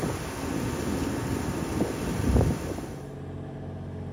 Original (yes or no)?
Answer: yes